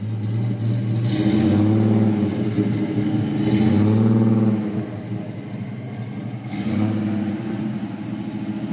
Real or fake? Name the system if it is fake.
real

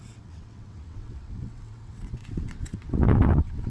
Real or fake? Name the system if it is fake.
fake, vocoder, WaveNeXt